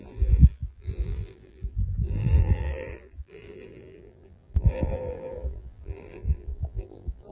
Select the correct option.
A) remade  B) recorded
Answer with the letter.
A